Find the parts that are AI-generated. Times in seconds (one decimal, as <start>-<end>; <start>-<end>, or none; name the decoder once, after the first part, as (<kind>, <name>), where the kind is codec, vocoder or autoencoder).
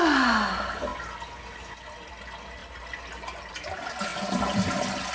none